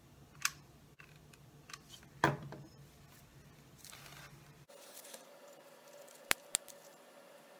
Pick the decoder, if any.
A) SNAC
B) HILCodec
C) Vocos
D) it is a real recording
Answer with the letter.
D